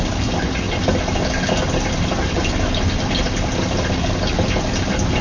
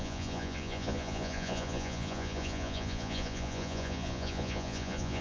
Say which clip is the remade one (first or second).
second